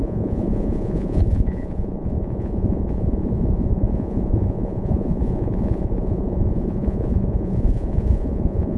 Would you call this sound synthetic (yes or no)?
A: yes